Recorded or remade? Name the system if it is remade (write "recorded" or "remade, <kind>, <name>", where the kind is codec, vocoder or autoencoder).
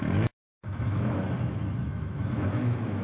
remade, autoencoder, DAC-VAE